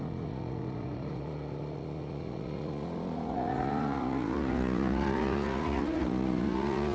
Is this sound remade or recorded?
remade